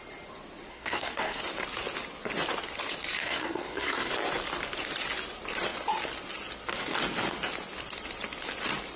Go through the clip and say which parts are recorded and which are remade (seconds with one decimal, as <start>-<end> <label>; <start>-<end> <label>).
0.0-0.7 recorded; 0.7-1.4 remade; 1.4-3.2 recorded; 3.2-4.1 remade; 4.1-9.0 recorded